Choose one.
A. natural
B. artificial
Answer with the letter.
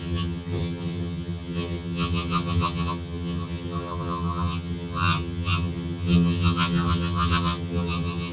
B